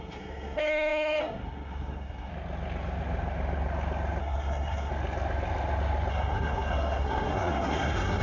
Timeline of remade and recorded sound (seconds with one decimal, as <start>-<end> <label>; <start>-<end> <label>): 0.0-2.3 remade; 2.3-4.2 recorded; 4.2-4.9 remade; 4.9-6.1 recorded; 6.1-8.2 remade

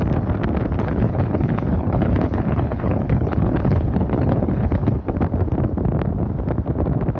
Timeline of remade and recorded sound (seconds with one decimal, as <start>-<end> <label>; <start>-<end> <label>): 0.0-0.8 recorded; 0.8-5.1 remade; 5.1-7.2 recorded